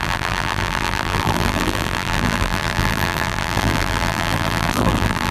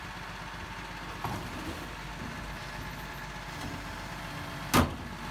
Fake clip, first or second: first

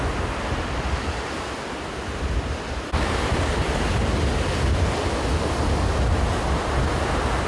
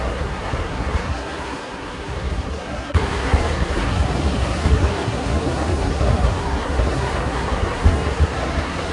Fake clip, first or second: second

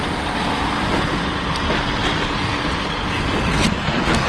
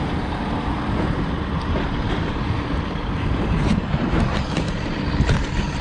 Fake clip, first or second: second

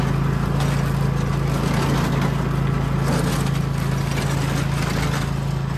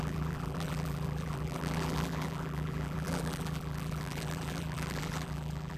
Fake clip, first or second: second